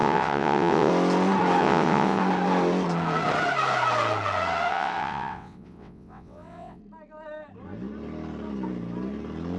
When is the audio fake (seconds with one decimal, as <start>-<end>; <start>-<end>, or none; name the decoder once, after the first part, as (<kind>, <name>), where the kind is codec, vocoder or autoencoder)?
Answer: 0.0-0.9 (vocoder, WaveNeXt); 1.6-2.2; 4.7-6.8